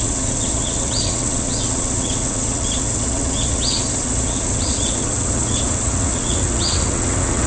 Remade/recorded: remade